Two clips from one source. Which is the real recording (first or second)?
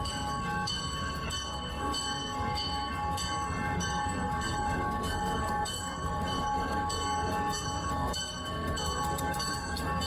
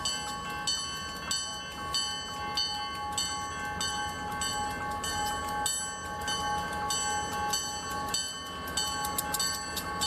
second